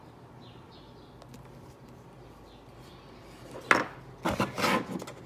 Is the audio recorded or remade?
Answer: recorded